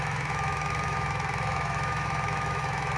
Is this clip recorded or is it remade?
remade